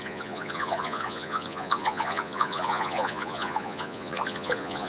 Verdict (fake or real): fake